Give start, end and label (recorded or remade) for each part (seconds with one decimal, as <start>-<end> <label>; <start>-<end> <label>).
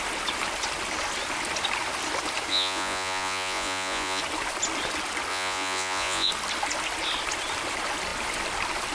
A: 0.0-2.5 recorded; 2.5-4.2 remade; 4.2-5.3 recorded; 5.3-6.3 remade; 6.3-8.9 recorded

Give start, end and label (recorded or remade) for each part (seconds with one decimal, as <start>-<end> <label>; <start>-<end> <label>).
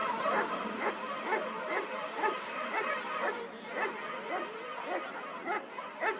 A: 0.0-0.9 remade; 0.9-1.9 recorded; 1.9-3.0 remade; 3.0-6.2 recorded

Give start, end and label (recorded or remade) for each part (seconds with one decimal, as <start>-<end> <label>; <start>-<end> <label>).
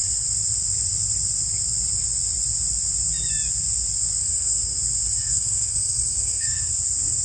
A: 0.0-4.2 recorded; 4.2-4.8 remade; 4.8-5.2 recorded; 5.2-6.7 remade; 6.7-7.2 recorded